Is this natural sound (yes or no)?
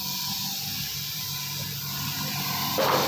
no